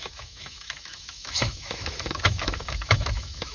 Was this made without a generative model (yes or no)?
no